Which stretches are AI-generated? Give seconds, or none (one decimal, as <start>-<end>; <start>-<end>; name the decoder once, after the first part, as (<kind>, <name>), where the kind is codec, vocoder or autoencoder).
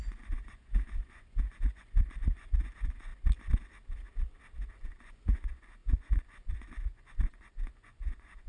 0.0-3.1 (vocoder, Vocos); 4.8-8.5